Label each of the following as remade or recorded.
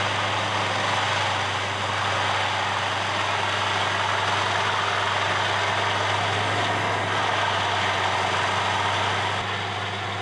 recorded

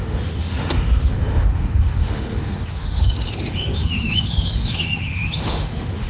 remade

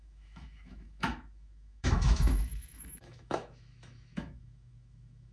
remade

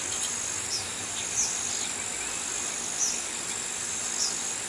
recorded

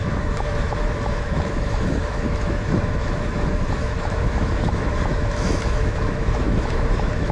remade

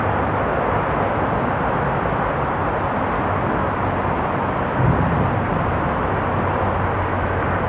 recorded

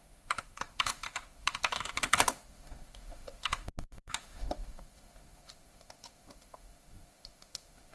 remade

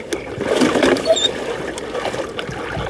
recorded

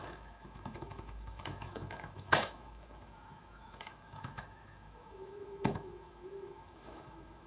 remade